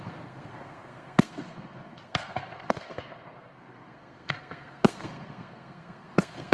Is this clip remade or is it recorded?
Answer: remade